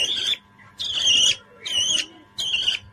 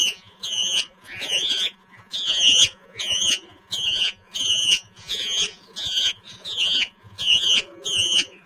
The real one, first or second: first